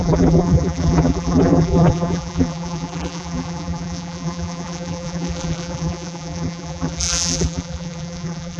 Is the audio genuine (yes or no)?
no